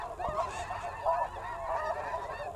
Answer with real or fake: real